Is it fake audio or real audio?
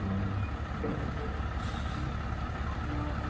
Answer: real